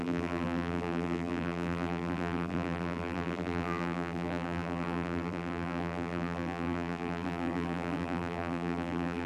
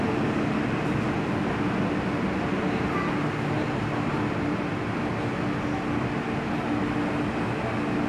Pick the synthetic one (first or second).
first